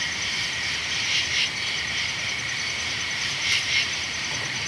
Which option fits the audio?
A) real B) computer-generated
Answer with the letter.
B